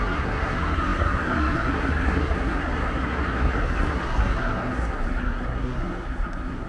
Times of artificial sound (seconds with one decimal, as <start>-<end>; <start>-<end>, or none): 0.0-6.7